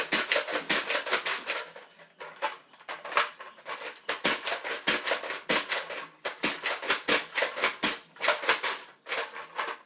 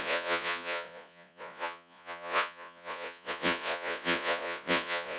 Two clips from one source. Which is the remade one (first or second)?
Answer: second